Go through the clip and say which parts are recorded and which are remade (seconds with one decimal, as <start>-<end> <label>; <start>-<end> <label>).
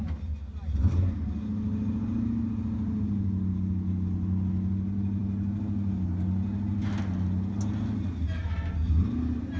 0.0-9.6 recorded